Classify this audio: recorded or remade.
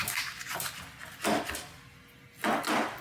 recorded